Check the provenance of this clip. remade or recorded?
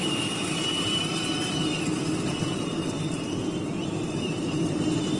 remade